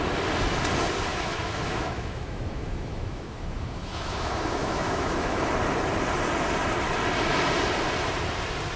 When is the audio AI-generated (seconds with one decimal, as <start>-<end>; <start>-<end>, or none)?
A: 1.1-5.5